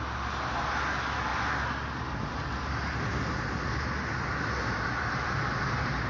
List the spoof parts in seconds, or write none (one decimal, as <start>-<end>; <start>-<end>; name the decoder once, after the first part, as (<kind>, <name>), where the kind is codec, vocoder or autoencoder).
none